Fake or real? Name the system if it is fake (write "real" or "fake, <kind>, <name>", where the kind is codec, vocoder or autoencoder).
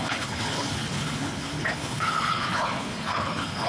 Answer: fake, codec, HILCodec